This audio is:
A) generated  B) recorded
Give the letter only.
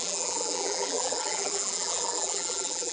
A